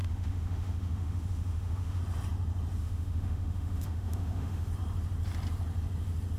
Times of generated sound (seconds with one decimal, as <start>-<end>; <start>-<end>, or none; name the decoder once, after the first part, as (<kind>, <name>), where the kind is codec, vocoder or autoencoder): 0.0-2.0 (autoencoder, DAC-VAE); 2.8-4.7